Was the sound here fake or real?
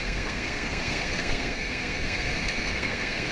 fake